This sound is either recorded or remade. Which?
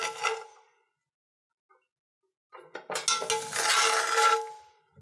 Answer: recorded